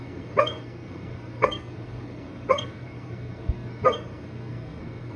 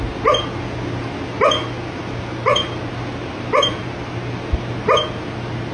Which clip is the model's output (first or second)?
first